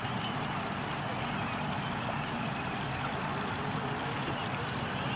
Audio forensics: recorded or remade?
recorded